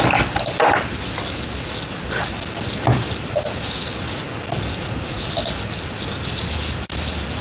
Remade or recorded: recorded